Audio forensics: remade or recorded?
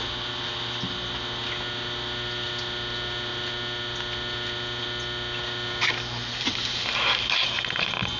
recorded